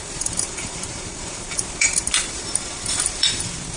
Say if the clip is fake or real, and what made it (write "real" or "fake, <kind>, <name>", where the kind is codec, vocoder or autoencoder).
fake, vocoder, BigVGAN v2